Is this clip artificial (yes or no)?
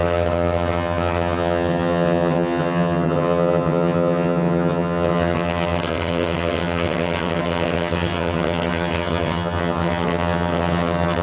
yes